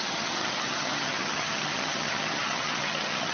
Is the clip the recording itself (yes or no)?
no